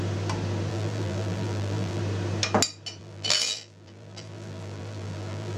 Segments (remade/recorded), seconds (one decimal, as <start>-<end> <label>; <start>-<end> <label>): 0.0-0.7 recorded; 0.7-2.0 remade; 2.0-3.0 recorded; 3.0-5.6 remade